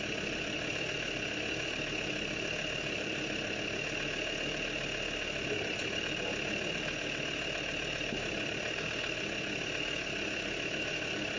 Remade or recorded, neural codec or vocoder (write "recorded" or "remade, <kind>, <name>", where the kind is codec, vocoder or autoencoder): recorded